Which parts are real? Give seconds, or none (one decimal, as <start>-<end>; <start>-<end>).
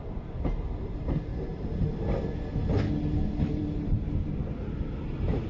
0.0-5.5